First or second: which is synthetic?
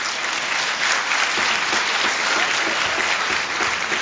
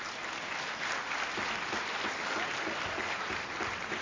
second